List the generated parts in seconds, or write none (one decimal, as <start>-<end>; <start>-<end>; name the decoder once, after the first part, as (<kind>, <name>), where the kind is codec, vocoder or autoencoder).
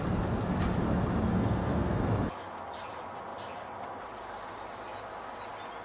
1.3-2.0 (codec, SNAC)